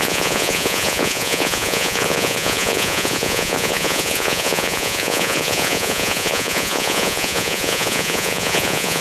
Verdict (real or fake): fake